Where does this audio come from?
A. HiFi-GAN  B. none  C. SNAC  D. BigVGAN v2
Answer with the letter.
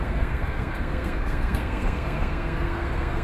C